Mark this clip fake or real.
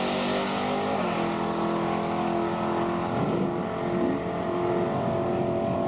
real